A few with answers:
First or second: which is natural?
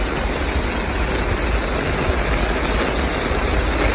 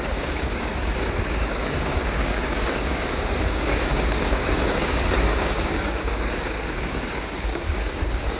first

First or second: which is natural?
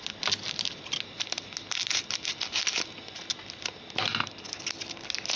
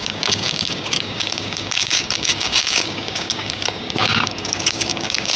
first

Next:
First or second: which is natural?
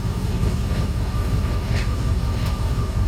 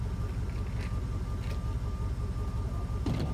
second